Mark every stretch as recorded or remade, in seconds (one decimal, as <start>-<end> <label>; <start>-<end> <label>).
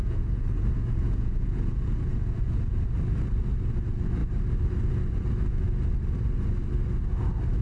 0.0-2.6 remade; 2.6-7.6 recorded